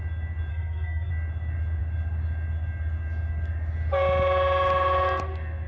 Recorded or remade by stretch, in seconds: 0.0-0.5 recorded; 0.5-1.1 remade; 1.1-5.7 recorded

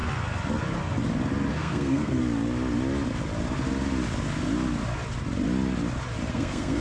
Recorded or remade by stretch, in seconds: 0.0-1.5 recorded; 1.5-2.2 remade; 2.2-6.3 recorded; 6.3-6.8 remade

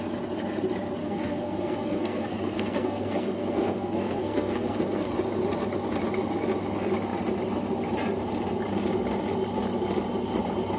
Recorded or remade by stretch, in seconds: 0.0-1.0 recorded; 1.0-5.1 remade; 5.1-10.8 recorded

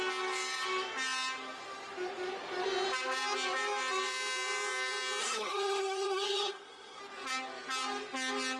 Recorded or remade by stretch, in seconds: 0.0-5.2 recorded; 5.2-7.0 remade; 7.0-8.6 recorded

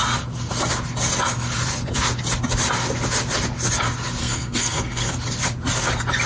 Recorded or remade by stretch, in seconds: 0.0-4.2 recorded; 4.2-5.1 remade; 5.1-6.3 recorded